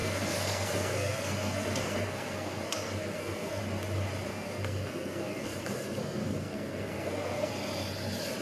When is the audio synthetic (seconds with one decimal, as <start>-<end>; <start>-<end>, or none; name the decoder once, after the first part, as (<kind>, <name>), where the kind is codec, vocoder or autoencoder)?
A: 0.0-3.6 (codec, SNAC); 4.3-7.5